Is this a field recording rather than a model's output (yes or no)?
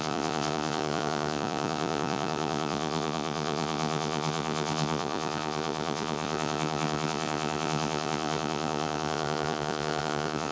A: no